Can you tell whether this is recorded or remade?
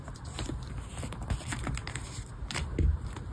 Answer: recorded